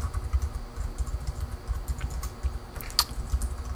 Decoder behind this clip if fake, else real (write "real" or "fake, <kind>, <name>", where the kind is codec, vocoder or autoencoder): real